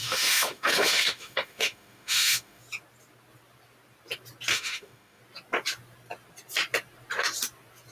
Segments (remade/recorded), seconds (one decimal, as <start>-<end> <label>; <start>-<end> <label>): 0.0-2.6 remade; 2.6-4.5 recorded; 4.5-5.2 remade; 5.2-7.9 recorded